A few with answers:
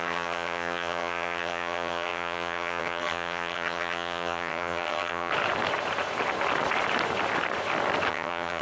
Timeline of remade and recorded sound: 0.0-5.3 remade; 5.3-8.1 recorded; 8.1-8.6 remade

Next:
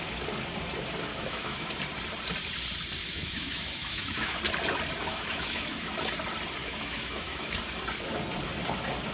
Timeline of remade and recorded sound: 0.0-1.1 recorded; 1.1-1.7 remade; 1.7-3.0 recorded; 3.0-4.4 remade; 4.4-5.1 recorded; 5.1-5.9 remade; 5.9-6.6 recorded; 6.6-7.6 remade; 7.6-9.1 recorded

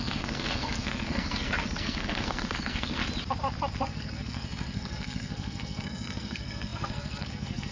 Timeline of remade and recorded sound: 0.0-3.0 remade; 3.0-3.8 recorded; 3.8-7.7 remade

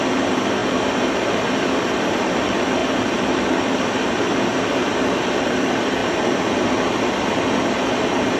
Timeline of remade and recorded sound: 0.0-6.0 remade; 6.0-7.7 recorded; 7.7-8.4 remade

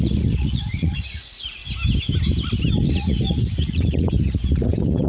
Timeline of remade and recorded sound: 0.0-1.6 remade; 1.6-2.9 recorded; 2.9-5.1 remade

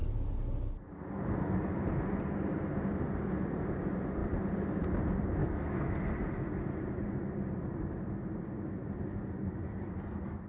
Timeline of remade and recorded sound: 0.0-5.4 recorded; 5.4-6.0 remade; 6.0-10.5 recorded

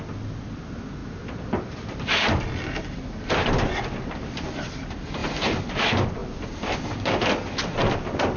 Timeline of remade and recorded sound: 0.0-8.4 recorded

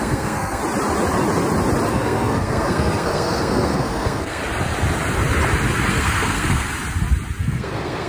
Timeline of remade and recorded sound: 0.0-0.6 remade; 0.6-1.9 recorded; 1.9-4.4 remade; 4.4-5.9 recorded; 5.9-6.7 remade; 6.7-7.4 recorded; 7.4-8.1 remade